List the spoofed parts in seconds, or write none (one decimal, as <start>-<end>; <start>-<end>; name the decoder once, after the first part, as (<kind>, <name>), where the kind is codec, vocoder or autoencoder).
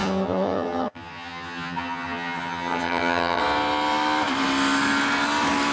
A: 0.0-3.4 (vocoder, HiFi-GAN)